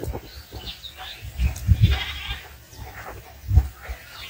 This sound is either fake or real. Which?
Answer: real